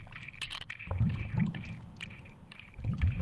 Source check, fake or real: real